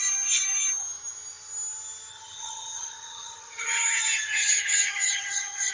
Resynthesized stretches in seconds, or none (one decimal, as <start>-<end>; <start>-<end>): 2.1-5.7